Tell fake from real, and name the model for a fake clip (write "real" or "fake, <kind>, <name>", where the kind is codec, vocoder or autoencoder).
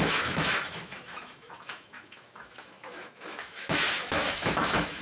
fake, autoencoder, DAC-VAE